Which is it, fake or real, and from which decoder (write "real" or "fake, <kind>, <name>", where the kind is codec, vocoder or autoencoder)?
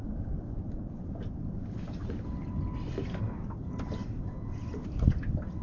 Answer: real